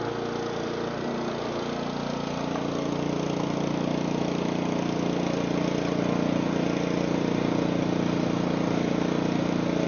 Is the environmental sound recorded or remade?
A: recorded